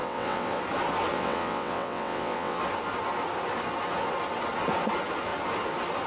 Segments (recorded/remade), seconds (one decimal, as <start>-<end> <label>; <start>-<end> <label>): 0.0-0.6 remade; 0.6-1.1 recorded; 1.1-2.6 remade; 2.6-6.1 recorded